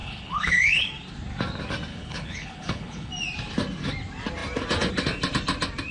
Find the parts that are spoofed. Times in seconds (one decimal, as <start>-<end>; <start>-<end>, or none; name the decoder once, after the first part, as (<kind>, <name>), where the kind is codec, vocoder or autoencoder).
0.0-0.9 (codec, HILCodec); 1.9-3.1